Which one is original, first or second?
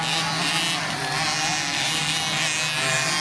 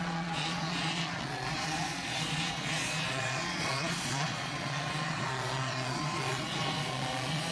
first